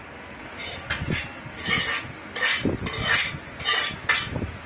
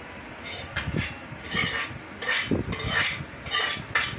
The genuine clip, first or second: first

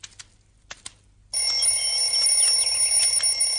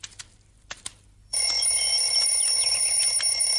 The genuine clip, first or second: first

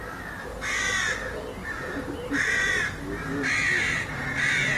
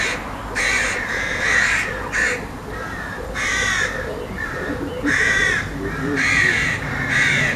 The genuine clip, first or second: first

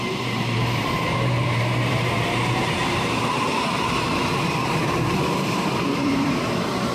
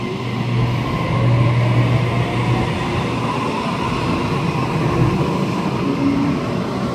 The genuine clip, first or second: second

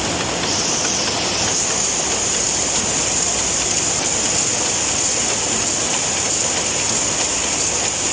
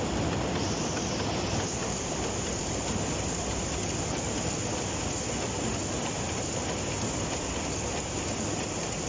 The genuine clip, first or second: first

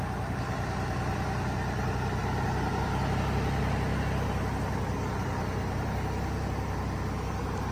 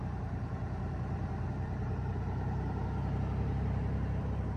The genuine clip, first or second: first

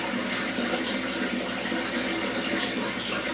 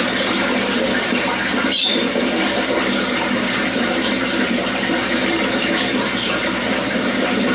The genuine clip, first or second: first